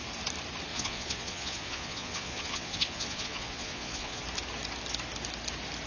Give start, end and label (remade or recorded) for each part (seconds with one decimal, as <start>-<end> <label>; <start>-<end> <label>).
0.0-0.7 recorded; 0.7-4.2 remade; 4.2-5.9 recorded